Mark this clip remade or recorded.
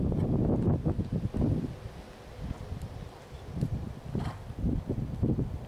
recorded